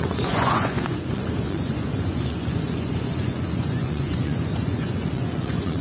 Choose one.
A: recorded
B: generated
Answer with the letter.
B